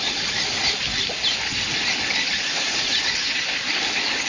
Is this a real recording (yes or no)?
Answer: yes